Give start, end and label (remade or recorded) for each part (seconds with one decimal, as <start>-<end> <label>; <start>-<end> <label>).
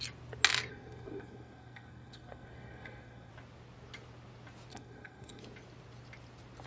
0.0-0.7 recorded; 0.7-3.3 remade; 3.3-4.7 recorded; 4.7-5.4 remade; 5.4-6.7 recorded